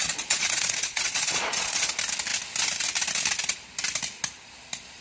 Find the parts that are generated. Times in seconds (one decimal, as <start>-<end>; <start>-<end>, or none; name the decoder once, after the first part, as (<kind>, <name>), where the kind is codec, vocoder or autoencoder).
0.0-1.9 (vocoder, Vocos)